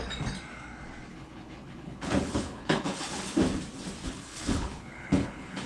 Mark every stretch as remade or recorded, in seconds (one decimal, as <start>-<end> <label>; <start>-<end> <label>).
0.0-1.1 recorded; 1.1-3.2 remade; 3.2-4.0 recorded; 4.0-5.7 remade